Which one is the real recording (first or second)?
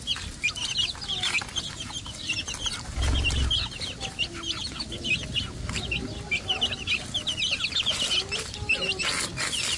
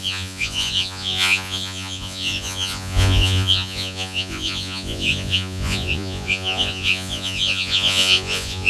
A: first